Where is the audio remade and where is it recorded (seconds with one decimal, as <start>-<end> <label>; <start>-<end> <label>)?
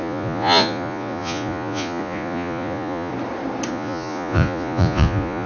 0.0-3.1 remade; 3.1-3.7 recorded; 3.7-5.5 remade